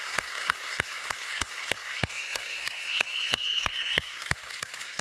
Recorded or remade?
remade